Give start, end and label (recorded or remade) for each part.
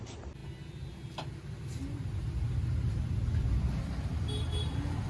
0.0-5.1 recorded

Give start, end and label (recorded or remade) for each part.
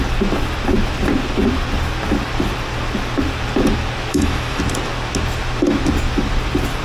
0.0-4.1 recorded; 4.1-4.6 remade; 4.6-6.8 recorded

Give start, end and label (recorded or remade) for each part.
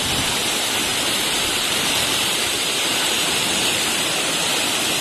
0.0-0.9 recorded; 0.9-3.9 remade; 3.9-5.0 recorded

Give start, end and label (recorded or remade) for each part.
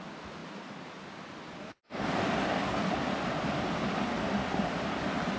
0.0-1.6 recorded; 1.6-2.9 remade; 2.9-5.4 recorded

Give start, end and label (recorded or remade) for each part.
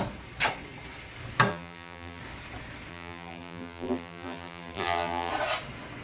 0.0-1.5 recorded; 1.5-2.2 remade; 2.2-2.9 recorded; 2.9-5.3 remade; 5.3-6.0 recorded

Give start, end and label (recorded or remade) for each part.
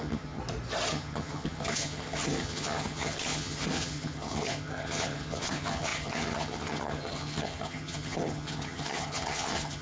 0.0-0.4 remade; 0.4-0.9 recorded; 0.9-9.8 remade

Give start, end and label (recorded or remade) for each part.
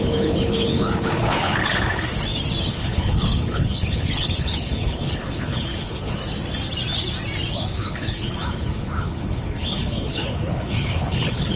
0.0-2.1 remade; 2.1-2.7 recorded; 2.7-6.2 remade; 6.2-7.5 recorded; 7.5-11.6 remade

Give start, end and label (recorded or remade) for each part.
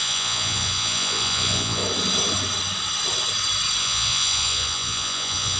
0.0-1.8 remade; 1.8-3.8 recorded; 3.8-5.6 remade